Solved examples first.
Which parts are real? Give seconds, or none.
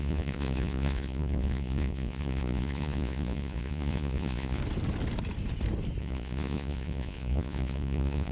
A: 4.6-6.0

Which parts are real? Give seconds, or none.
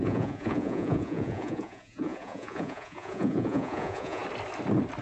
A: 4.2-5.0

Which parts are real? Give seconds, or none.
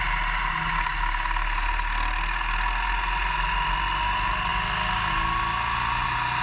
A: 0.0-6.4